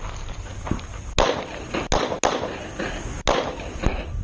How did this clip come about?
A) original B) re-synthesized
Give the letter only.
A